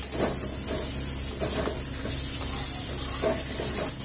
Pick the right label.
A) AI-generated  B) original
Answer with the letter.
B